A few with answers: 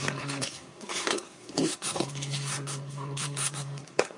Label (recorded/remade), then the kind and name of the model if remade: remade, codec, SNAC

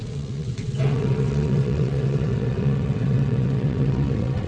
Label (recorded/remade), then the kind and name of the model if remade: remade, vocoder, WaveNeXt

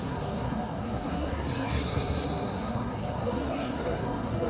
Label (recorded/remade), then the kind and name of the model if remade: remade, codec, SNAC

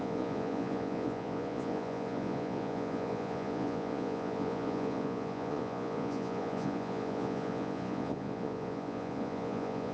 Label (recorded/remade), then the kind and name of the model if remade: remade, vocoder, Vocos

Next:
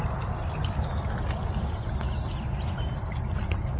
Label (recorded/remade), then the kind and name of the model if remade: recorded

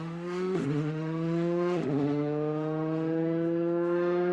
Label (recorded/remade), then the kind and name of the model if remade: remade, autoencoder, DAC-VAE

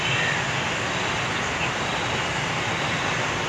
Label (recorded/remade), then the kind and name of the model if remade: recorded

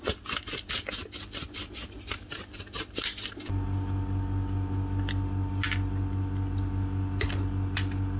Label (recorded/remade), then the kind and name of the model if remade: recorded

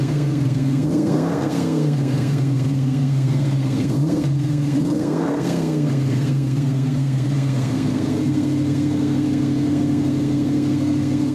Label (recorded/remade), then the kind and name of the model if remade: remade, codec, SNAC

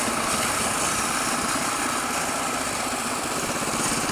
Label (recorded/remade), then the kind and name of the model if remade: remade, vocoder, BigVGAN v2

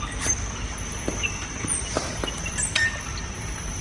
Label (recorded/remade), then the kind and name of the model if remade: remade, vocoder, BigVGAN v2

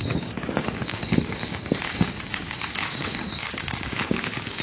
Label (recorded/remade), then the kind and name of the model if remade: remade, codec, DAC